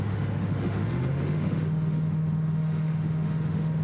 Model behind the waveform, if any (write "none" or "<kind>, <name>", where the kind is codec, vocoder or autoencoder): autoencoder, DAC-VAE